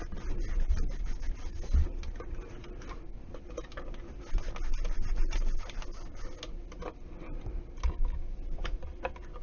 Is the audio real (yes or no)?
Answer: yes